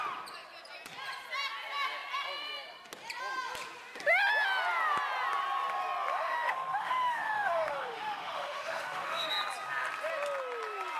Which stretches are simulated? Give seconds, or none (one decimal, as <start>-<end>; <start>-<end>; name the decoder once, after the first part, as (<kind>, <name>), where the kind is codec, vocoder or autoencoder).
6.1-9.3 (autoencoder, DAC-VAE)